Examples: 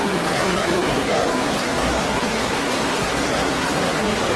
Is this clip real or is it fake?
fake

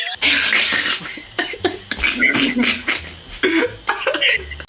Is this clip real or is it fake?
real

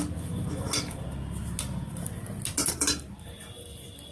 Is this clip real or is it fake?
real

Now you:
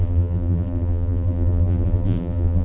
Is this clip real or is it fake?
fake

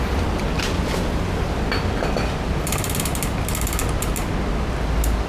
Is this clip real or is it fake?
real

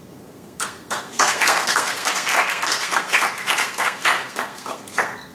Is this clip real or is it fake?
fake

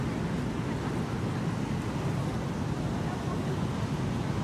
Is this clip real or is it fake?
real